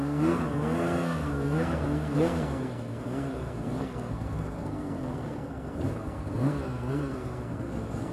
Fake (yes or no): yes